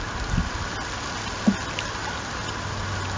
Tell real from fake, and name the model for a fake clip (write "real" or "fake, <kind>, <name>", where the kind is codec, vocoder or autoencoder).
real